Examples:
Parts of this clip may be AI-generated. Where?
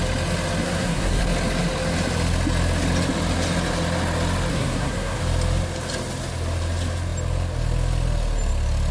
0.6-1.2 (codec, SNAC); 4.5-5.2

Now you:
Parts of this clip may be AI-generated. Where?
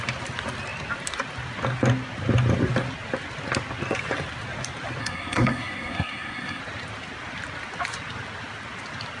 5.0-6.6 (codec, SNAC)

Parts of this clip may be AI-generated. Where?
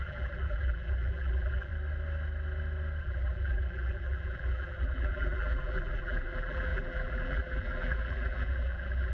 0.0-1.7 (vocoder, BigVGAN v2); 3.0-9.1